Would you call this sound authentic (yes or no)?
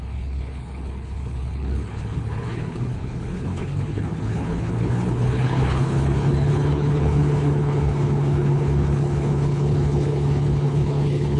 no